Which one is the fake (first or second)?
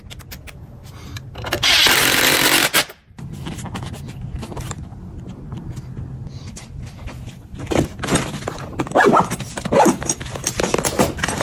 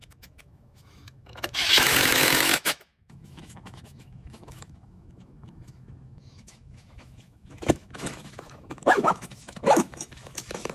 second